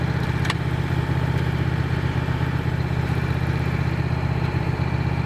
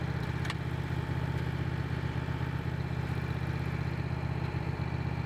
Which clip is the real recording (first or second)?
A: second